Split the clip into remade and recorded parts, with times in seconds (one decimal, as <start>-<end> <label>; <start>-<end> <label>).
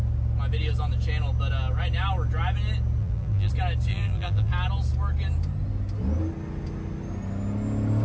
0.0-3.0 recorded; 3.0-3.5 remade; 3.5-3.9 recorded; 3.9-4.5 remade; 4.5-8.0 recorded